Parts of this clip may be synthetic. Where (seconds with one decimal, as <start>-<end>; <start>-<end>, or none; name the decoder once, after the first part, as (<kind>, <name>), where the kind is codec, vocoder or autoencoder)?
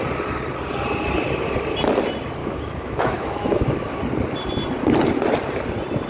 2.4-4.0 (autoencoder, DAC-VAE)